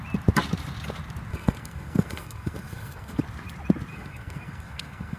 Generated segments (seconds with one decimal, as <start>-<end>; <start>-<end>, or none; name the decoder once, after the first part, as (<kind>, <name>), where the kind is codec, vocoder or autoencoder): 1.3-3.2 (codec, SNAC); 3.9-5.2